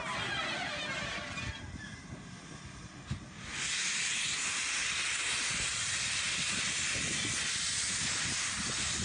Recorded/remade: recorded